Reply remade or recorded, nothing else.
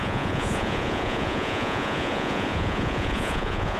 remade